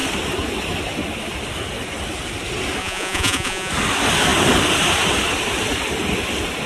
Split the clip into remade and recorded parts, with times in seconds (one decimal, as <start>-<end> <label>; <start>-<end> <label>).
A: 0.0-2.8 recorded; 2.8-3.7 remade; 3.7-6.7 recorded

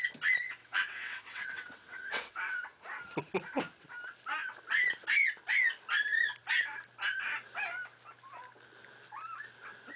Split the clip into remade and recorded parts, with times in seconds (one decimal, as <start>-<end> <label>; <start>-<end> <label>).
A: 0.0-0.6 recorded; 0.6-2.4 remade; 2.4-10.0 recorded

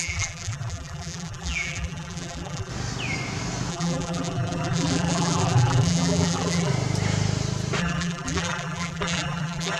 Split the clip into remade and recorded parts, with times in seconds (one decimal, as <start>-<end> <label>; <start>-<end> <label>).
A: 0.0-2.7 remade; 2.7-3.7 recorded; 3.7-6.7 remade; 6.7-7.8 recorded; 7.8-9.8 remade

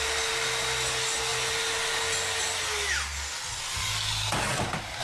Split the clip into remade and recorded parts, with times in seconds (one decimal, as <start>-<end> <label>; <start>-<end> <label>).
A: 0.0-5.0 recorded

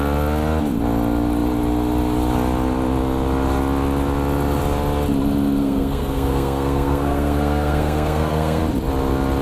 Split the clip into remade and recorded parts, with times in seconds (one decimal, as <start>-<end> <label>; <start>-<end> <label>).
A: 0.0-5.6 recorded; 5.6-8.6 remade; 8.6-9.4 recorded

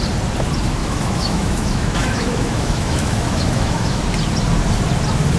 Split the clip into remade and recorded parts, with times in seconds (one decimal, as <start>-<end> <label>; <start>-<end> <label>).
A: 0.0-0.8 recorded; 0.8-4.0 remade; 4.0-5.4 recorded